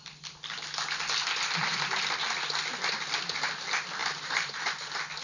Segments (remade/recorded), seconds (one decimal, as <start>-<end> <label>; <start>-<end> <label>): 0.0-4.0 recorded; 4.0-4.7 remade; 4.7-5.2 recorded